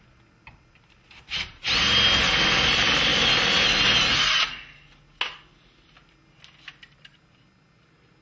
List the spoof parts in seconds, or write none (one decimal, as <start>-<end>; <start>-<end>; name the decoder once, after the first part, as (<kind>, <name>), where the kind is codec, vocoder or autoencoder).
none